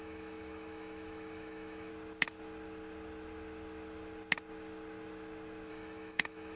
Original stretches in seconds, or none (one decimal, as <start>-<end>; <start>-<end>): 1.9-5.7